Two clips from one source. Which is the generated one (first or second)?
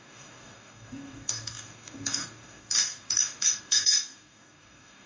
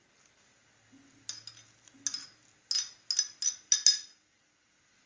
first